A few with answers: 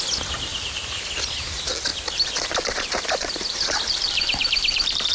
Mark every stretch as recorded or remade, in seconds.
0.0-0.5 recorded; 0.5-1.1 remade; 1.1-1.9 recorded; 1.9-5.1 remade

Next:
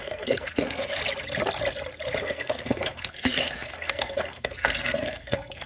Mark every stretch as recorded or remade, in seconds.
0.0-1.0 remade; 1.0-2.2 recorded; 2.2-5.7 remade